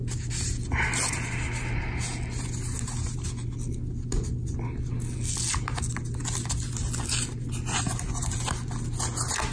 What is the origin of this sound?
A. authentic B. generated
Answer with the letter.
A